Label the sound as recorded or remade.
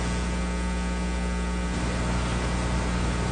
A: recorded